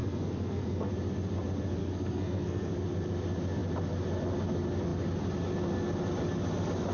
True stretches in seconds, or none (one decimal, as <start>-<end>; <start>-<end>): 0.9-1.8; 2.7-6.9